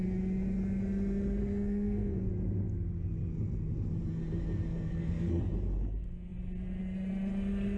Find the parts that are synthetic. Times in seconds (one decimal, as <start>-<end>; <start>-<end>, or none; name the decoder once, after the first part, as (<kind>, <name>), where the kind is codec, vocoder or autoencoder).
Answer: 1.4-2.3 (codec, SNAC); 4.7-5.4